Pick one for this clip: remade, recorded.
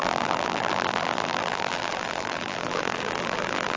remade